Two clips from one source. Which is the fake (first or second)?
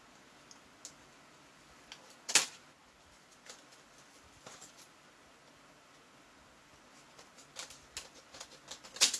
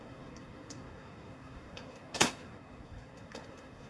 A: second